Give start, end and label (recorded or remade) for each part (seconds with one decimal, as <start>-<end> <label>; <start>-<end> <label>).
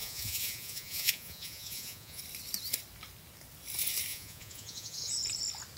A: 0.0-2.2 remade; 2.2-4.1 recorded; 4.1-5.1 remade; 5.1-5.8 recorded